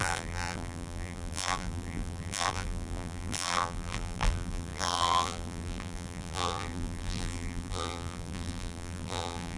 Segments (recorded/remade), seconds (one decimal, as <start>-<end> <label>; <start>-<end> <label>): 0.0-9.6 remade